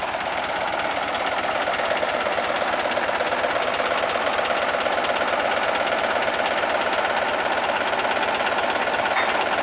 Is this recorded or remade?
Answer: recorded